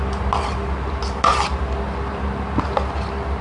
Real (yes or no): yes